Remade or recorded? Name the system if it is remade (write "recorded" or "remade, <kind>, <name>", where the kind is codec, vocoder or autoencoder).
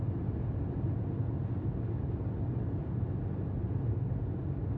recorded